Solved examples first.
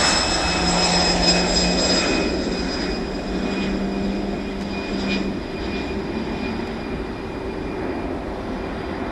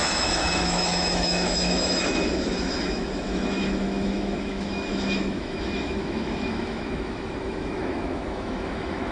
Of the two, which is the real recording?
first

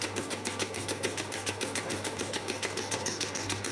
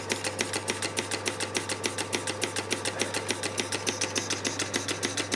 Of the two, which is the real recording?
second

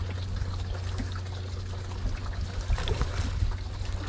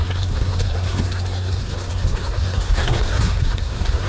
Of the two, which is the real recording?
first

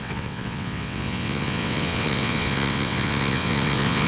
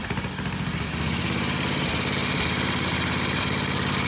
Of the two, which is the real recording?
second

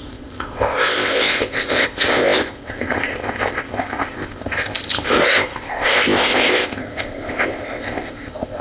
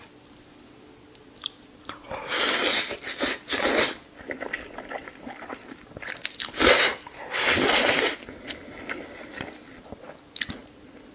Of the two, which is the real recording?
second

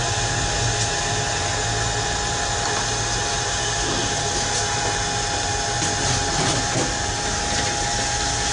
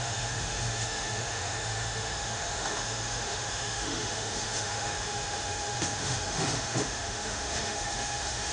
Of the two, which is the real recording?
first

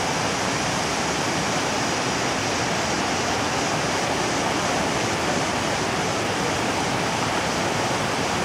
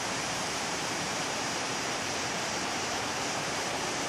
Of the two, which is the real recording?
first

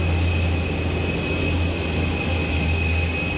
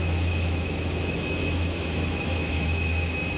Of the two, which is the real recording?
first